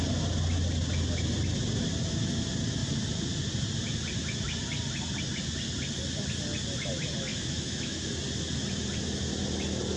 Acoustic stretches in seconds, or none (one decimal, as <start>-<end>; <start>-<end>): 0.0-7.3; 8.1-10.0